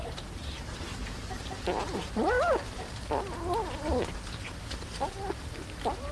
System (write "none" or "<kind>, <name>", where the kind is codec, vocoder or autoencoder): none